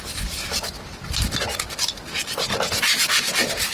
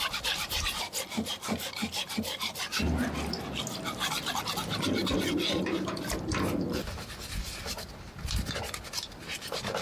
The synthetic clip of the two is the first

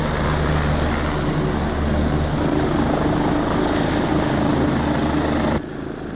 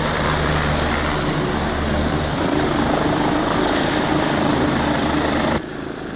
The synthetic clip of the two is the second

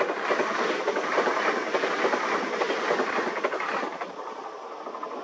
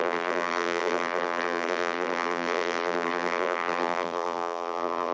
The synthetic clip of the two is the second